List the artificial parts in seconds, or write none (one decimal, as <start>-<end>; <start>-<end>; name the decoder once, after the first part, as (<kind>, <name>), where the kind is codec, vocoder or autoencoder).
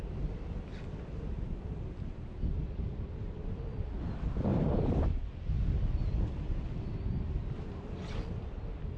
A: 4.5-5.2 (vocoder, BigVGAN v2)